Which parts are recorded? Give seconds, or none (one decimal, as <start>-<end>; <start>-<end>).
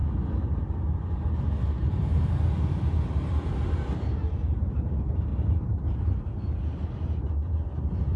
0.0-1.6; 2.1-4.7